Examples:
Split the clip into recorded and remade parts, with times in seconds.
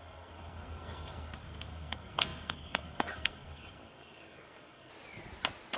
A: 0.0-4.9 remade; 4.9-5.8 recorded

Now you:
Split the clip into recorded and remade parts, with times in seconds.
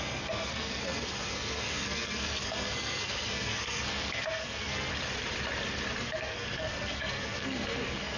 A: 0.0-4.9 remade; 4.9-6.0 recorded; 6.0-8.2 remade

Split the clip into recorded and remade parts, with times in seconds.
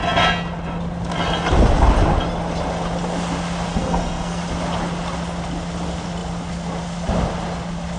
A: 0.0-3.7 recorded; 3.7-4.4 remade; 4.4-8.0 recorded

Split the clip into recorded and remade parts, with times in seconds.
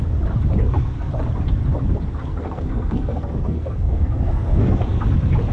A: 0.0-0.6 recorded; 0.6-1.1 remade; 1.1-2.3 recorded; 2.3-5.0 remade; 5.0-5.5 recorded